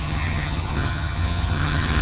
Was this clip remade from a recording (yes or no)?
yes